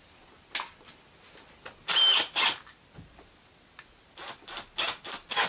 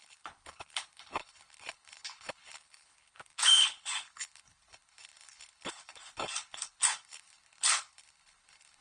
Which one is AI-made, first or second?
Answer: second